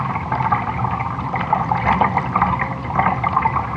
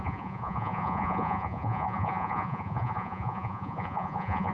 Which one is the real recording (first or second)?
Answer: first